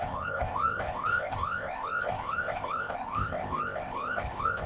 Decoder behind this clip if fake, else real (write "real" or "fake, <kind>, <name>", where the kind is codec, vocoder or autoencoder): fake, codec, ZipCodec